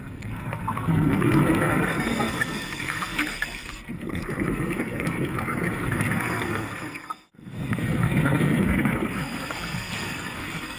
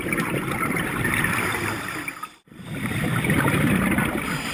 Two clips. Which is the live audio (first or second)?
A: second